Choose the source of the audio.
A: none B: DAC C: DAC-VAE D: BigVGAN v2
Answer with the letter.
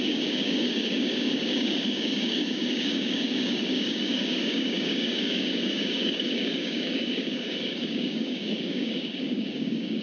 B